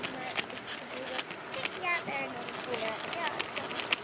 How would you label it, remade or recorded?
recorded